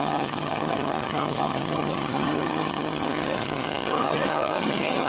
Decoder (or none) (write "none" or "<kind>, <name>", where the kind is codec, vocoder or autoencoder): vocoder, HiFi-GAN